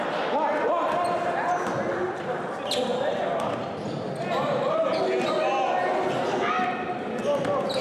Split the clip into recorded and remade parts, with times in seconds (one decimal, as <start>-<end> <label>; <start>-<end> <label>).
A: 0.0-2.9 recorded; 2.9-3.5 remade; 3.5-7.8 recorded